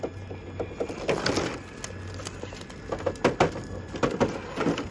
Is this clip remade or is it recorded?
recorded